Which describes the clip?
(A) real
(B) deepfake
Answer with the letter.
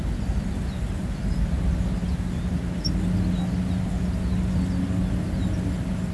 A